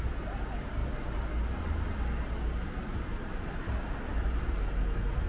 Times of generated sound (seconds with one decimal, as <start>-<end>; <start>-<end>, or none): none